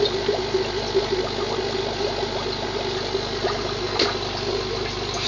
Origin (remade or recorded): recorded